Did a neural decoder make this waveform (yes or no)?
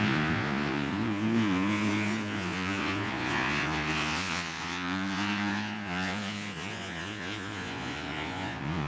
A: yes